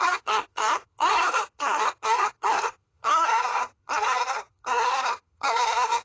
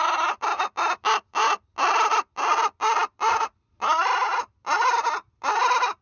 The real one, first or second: second